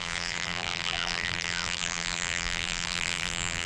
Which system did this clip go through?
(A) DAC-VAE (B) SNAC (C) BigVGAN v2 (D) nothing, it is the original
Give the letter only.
C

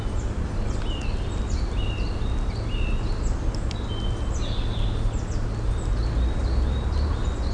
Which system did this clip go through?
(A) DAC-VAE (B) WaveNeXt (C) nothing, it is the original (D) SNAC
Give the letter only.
C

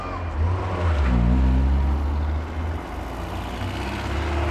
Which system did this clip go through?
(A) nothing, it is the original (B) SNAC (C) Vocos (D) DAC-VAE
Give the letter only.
A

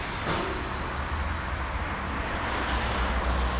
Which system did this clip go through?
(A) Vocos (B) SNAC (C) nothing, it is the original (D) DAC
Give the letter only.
C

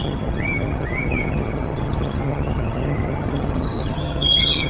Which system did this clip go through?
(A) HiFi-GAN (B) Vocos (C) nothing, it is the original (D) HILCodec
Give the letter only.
A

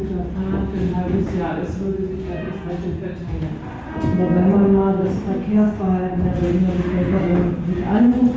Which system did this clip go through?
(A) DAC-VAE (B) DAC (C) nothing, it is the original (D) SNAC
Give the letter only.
C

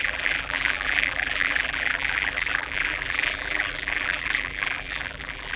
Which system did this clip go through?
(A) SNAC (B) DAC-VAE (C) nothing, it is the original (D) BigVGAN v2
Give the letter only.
D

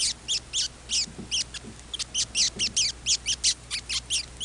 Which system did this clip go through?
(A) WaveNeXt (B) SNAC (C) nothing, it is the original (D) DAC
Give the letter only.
C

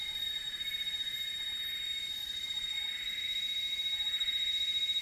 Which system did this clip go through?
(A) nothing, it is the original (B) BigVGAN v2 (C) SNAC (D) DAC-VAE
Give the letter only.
A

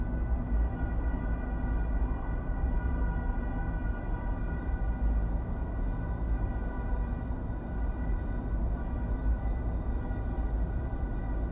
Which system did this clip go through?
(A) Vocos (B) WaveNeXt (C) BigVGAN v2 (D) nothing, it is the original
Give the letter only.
D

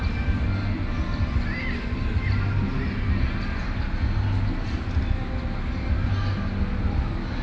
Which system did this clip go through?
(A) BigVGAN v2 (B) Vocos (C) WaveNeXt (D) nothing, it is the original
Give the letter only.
D